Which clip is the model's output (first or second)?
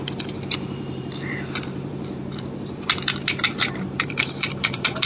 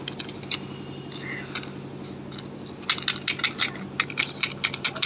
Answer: first